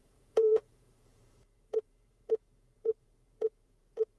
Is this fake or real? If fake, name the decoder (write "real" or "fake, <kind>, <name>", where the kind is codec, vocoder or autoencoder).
fake, vocoder, Vocos